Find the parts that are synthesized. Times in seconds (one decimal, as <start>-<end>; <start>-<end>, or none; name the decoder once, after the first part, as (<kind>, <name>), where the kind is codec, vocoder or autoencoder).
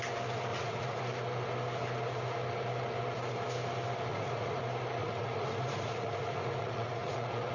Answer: 0.5-1.0 (vocoder, Vocos); 4.1-4.6; 5.0-7.5